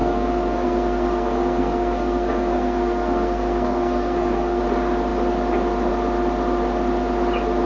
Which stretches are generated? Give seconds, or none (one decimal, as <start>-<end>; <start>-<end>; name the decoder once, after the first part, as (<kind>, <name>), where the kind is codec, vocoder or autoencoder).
0.0-4.6 (codec, SNAC)